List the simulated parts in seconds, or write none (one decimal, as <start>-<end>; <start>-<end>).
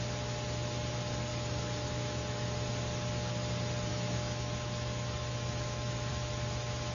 1.3-2.7; 3.9-6.1